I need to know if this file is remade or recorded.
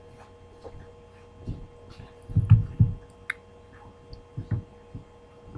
recorded